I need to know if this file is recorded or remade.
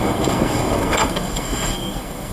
remade